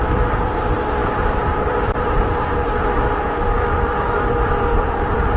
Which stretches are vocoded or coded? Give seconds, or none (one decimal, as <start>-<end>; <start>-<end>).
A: 1.0-3.2; 4.7-5.4